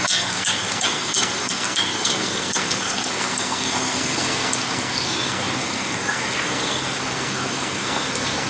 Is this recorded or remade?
remade